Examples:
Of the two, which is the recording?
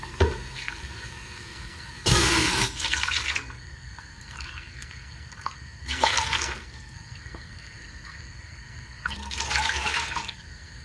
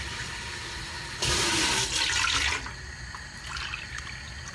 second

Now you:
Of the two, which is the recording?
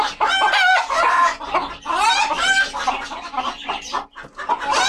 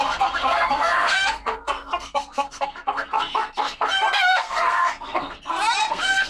first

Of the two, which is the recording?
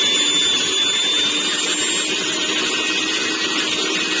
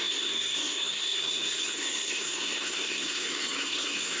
first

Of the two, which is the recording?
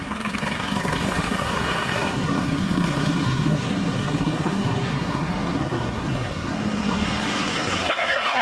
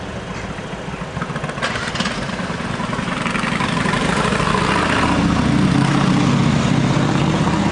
second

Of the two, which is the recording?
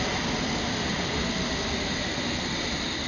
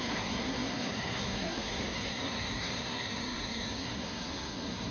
first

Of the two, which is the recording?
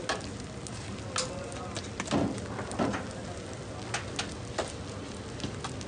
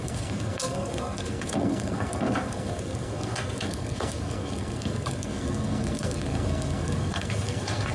first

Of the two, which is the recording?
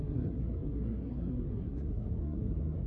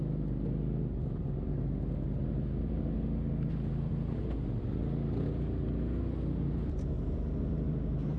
second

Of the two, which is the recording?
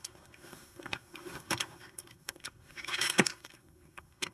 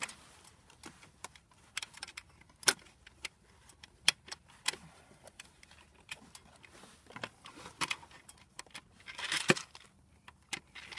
second